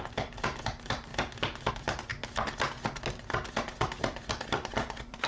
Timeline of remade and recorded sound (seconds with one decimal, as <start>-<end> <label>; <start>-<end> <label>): 0.0-1.1 remade; 1.1-1.7 recorded; 1.7-2.1 remade; 2.1-3.6 recorded; 3.6-5.3 remade